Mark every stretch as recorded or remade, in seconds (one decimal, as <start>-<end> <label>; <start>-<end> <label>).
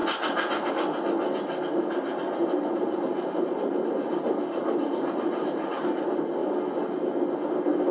0.0-2.4 recorded; 2.4-5.8 remade; 5.8-7.9 recorded